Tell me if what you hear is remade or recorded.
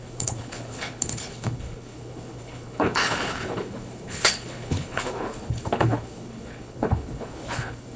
remade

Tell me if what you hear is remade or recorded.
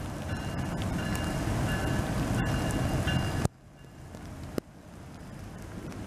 recorded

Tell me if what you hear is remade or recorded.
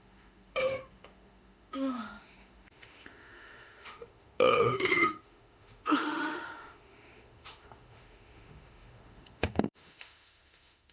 remade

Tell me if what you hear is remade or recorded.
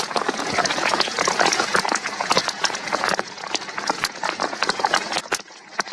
remade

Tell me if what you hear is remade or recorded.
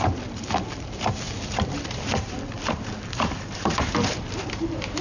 remade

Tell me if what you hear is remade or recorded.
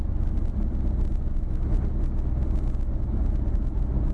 recorded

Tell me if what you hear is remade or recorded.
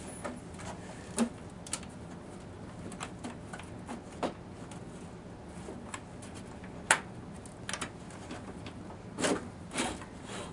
recorded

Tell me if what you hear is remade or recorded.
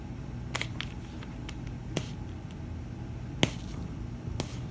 recorded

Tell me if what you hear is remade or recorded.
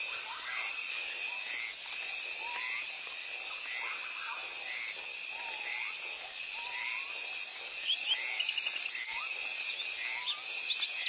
recorded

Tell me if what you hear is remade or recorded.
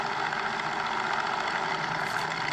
recorded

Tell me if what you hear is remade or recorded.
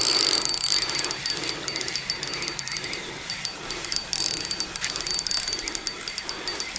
recorded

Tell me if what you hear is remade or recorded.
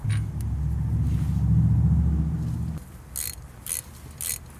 recorded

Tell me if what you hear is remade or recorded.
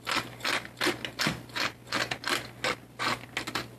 recorded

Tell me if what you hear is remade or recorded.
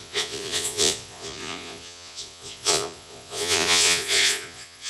remade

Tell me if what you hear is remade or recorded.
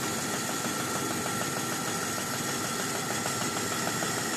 recorded